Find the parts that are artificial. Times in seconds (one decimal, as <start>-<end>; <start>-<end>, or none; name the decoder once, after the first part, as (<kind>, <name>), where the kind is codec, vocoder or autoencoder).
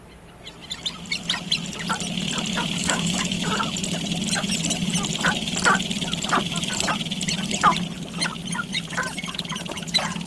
2.8-3.5 (autoencoder, DAC-VAE)